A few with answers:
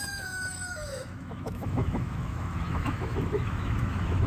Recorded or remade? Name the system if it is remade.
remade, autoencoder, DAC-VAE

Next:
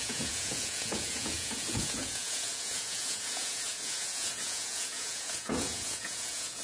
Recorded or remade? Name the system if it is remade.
remade, vocoder, Vocos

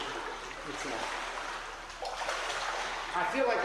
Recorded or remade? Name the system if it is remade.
recorded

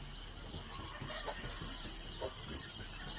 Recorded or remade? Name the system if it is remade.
recorded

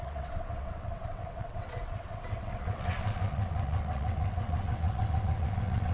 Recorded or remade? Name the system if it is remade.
remade, vocoder, WaveNeXt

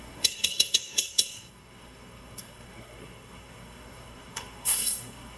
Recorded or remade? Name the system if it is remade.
remade, codec, SNAC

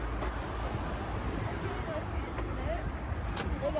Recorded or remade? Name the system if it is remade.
recorded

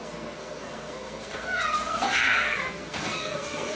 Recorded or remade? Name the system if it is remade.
remade, codec, SNAC